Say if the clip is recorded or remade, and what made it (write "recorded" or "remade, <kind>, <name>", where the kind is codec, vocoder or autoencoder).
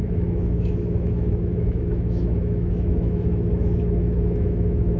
remade, autoencoder, DAC-VAE